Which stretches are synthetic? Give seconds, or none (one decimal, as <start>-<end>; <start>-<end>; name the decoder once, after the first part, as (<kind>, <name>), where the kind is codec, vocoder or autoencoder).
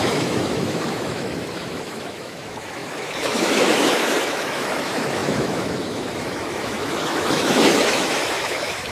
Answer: 0.0-8.9 (autoencoder, DAC-VAE)